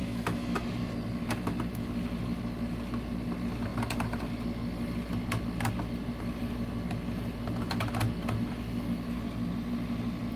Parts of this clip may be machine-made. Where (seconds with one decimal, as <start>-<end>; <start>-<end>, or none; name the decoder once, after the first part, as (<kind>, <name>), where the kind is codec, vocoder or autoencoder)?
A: 0.0-0.6 (autoencoder, DAC-VAE)